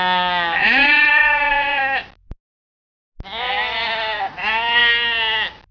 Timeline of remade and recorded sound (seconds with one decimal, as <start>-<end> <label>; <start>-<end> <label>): 0.0-0.6 recorded; 0.6-1.8 remade; 1.8-5.7 recorded